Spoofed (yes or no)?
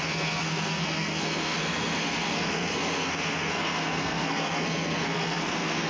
yes